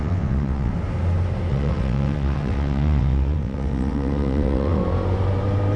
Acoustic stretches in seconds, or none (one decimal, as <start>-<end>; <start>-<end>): 0.7-1.5; 4.8-5.8